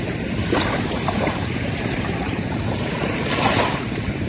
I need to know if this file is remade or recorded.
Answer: remade